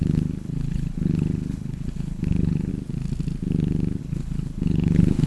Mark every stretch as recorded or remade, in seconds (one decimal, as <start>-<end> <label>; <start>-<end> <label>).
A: 0.0-2.7 remade; 2.7-4.0 recorded; 4.0-5.3 remade